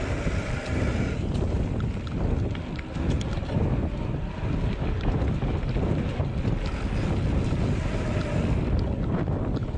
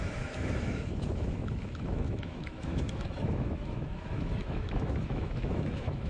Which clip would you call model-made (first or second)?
second